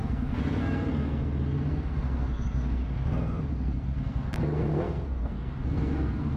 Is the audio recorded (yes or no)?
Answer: no